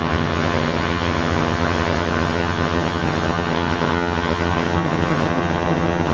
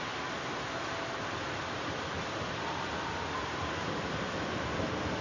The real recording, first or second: second